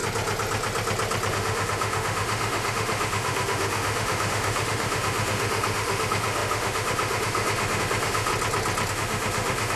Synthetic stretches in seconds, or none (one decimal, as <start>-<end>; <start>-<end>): 1.3-8.3; 8.9-9.8